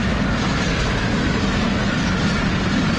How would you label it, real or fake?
real